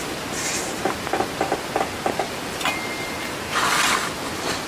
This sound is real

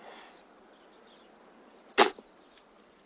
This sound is real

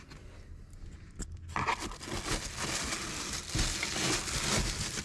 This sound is real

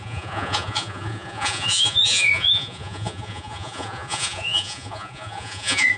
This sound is fake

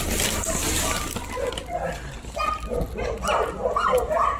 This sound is real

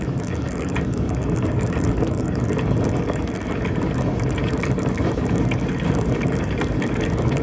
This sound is fake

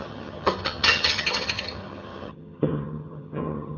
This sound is fake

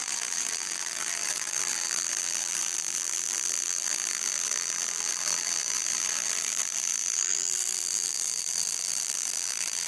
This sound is fake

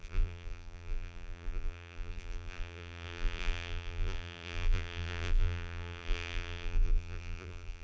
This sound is fake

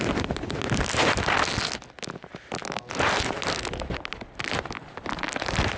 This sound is real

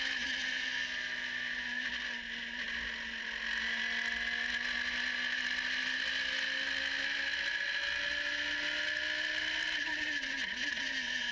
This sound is real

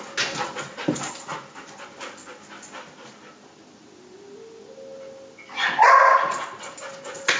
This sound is real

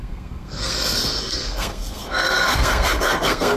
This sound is fake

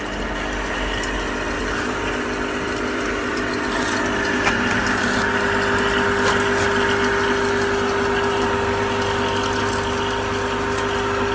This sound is real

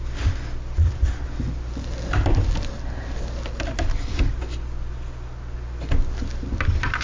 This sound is real